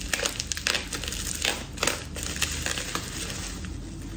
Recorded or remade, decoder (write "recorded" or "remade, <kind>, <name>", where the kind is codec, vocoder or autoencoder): recorded